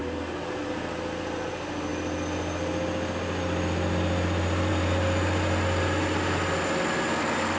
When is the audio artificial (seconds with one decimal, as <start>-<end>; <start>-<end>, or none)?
none